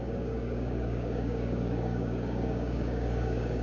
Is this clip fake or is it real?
fake